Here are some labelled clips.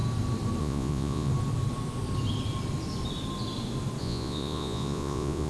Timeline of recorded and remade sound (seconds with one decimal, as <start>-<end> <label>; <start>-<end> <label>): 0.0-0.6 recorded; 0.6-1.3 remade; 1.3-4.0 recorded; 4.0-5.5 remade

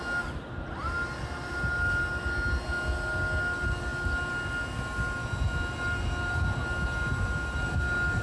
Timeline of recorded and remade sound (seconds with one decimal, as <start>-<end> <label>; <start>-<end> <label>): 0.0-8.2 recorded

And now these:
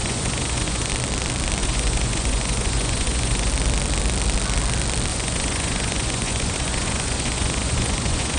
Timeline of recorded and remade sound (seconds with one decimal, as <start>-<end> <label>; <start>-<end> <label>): 0.0-0.9 remade; 0.9-1.6 recorded; 1.6-3.5 remade; 3.5-5.1 recorded; 5.1-8.4 remade